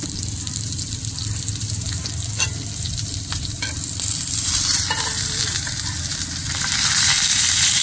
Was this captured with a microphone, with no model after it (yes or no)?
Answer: no